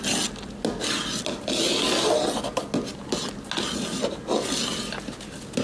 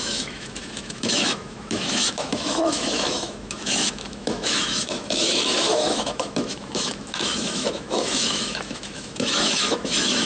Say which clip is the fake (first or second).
second